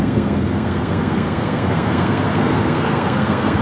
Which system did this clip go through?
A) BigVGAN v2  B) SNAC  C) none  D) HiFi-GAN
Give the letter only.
B